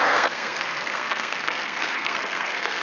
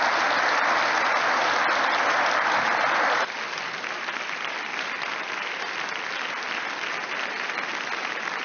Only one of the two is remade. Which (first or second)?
first